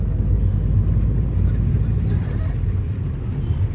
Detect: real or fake real